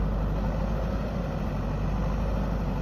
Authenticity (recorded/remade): recorded